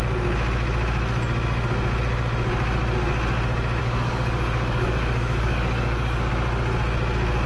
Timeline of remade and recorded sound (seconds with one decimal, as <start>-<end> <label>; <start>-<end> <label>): 0.0-3.8 recorded; 3.8-6.3 remade; 6.3-7.5 recorded